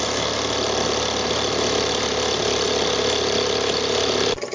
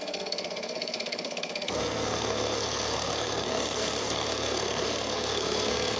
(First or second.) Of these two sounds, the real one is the first